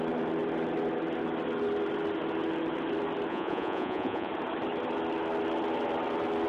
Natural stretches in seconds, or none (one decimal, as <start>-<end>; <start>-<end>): 0.0-3.3; 4.3-6.5